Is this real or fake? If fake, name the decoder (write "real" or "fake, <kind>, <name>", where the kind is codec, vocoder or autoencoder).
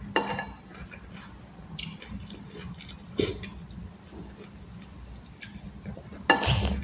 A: real